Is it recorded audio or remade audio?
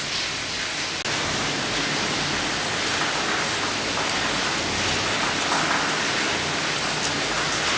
recorded